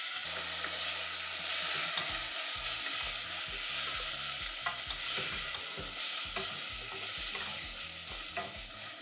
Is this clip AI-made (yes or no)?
no